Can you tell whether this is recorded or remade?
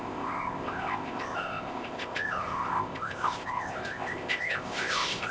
remade